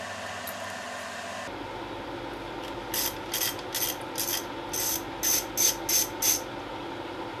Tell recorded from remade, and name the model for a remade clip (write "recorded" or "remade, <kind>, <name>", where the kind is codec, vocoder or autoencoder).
recorded